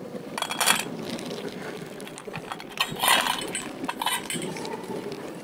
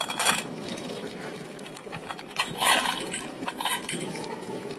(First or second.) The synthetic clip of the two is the second